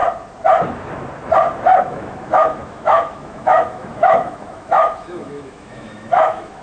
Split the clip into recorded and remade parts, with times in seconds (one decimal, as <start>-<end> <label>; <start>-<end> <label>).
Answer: 0.0-1.8 recorded; 1.8-6.6 remade